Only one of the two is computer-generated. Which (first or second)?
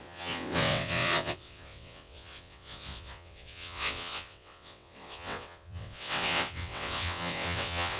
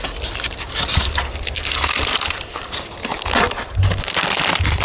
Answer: first